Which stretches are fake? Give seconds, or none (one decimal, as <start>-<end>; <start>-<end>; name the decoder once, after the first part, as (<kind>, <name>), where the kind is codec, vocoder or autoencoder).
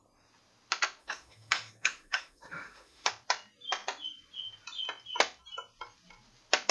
1.0-3.1 (autoencoder, DAC-VAE)